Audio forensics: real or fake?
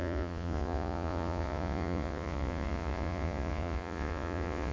fake